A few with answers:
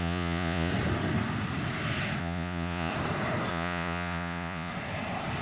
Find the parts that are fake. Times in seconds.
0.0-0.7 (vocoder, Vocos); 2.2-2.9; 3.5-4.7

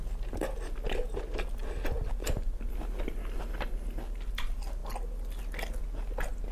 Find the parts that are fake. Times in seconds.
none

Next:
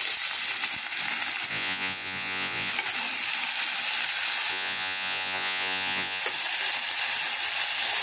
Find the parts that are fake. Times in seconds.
1.5-2.7 (vocoder, Vocos); 4.5-6.2

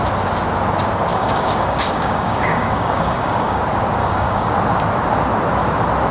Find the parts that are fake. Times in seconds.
1.1-3.6 (codec, DAC); 4.0-4.5